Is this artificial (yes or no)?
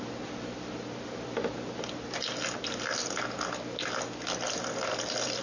no